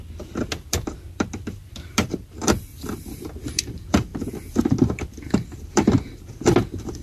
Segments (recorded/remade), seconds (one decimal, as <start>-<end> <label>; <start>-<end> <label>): 0.0-4.1 remade; 4.1-4.8 recorded; 4.8-7.0 remade